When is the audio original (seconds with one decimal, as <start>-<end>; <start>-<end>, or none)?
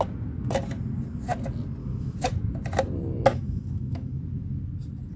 0.0-1.8; 2.3-3.3; 4.2-5.2